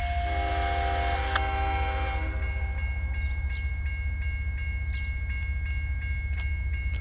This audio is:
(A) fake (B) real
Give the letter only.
B